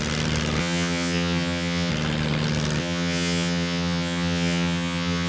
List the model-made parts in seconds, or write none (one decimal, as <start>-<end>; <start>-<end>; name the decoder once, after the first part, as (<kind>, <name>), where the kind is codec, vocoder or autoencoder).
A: 0.6-1.9 (vocoder, HiFi-GAN); 2.8-5.3